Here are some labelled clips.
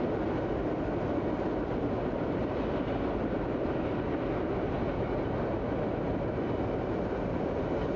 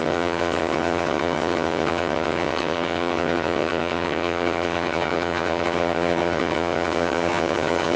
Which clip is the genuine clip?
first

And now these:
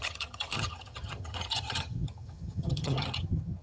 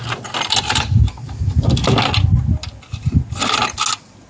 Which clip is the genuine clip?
second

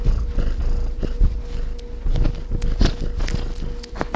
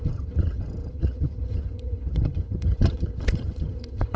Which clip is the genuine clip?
first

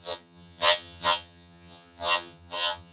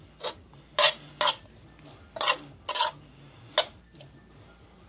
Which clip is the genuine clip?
second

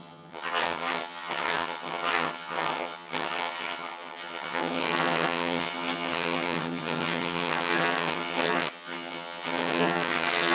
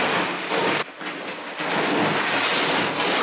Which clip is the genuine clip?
second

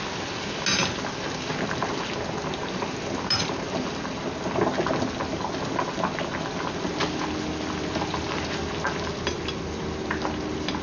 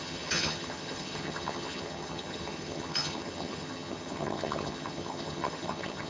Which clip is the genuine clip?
first